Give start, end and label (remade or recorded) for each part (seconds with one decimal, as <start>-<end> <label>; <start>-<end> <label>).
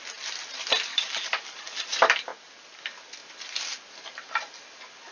0.0-0.9 recorded; 0.9-1.8 remade; 1.8-5.1 recorded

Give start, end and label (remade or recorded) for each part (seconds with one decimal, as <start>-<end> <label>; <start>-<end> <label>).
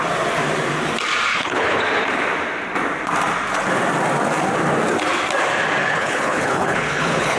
0.0-1.3 recorded; 1.3-1.8 remade; 1.8-5.8 recorded; 5.8-7.4 remade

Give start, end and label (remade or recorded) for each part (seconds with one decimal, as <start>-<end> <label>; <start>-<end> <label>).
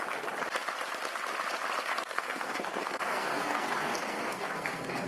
0.0-1.9 recorded; 1.9-5.1 remade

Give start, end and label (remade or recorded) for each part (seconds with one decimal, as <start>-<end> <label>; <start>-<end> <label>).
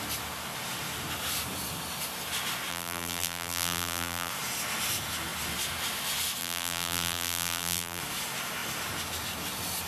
0.0-2.7 recorded; 2.7-4.3 remade; 4.3-6.4 recorded; 6.4-8.0 remade; 8.0-9.9 recorded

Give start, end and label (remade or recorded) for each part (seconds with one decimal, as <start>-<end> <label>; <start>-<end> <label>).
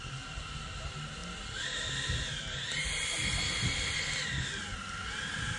0.0-5.6 recorded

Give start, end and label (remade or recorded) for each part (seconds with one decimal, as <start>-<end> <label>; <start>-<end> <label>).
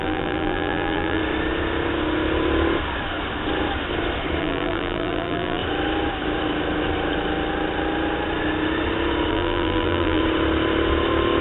0.0-1.2 remade; 1.2-4.4 recorded; 4.4-5.6 remade; 5.6-9.3 recorded; 9.3-10.2 remade; 10.2-11.4 recorded